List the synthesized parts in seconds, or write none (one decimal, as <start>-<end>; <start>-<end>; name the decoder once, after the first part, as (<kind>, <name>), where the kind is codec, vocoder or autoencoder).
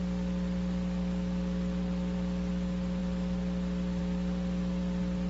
none